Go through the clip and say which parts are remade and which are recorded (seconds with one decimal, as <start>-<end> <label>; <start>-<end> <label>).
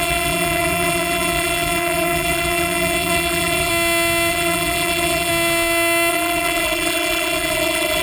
0.0-3.7 remade; 3.7-4.3 recorded; 4.3-5.3 remade; 5.3-6.1 recorded; 6.1-8.0 remade